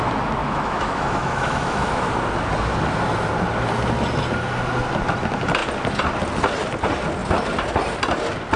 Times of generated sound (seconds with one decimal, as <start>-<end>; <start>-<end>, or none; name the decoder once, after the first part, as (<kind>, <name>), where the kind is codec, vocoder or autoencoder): 0.4-2.1 (autoencoder, DAC-VAE)